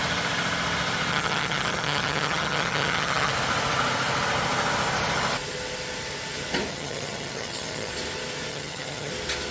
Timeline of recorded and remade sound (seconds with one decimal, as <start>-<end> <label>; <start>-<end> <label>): 0.0-1.1 recorded; 1.1-3.3 remade; 3.3-6.7 recorded; 6.7-7.9 remade; 7.9-8.5 recorded; 8.5-9.1 remade; 9.1-9.5 recorded